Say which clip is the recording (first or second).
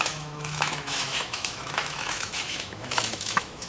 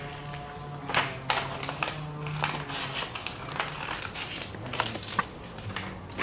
second